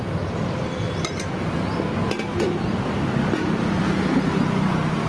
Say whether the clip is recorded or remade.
recorded